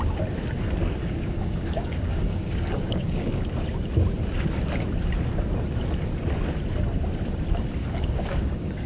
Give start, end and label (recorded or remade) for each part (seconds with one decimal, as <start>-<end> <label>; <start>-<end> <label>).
0.0-1.0 recorded; 1.0-3.5 remade; 3.5-7.8 recorded; 7.8-8.9 remade